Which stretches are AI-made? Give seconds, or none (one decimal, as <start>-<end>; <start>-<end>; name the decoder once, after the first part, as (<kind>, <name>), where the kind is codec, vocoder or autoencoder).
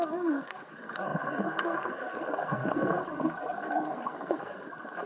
0.0-5.1 (codec, SNAC)